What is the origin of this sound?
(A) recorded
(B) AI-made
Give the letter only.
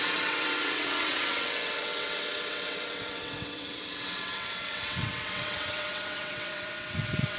B